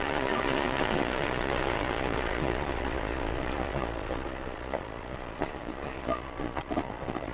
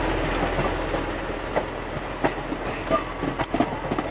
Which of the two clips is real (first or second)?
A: second